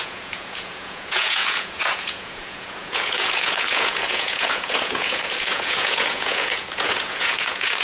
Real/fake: fake